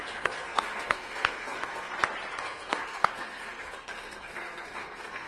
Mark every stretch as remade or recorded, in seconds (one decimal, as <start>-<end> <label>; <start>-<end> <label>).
0.0-1.9 remade; 1.9-2.4 recorded; 2.4-5.3 remade